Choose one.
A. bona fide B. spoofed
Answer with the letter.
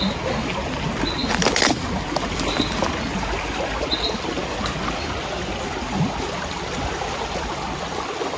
A